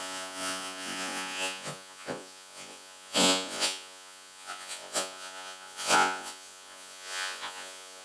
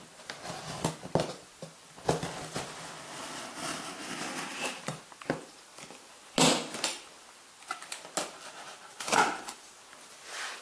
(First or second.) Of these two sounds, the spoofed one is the first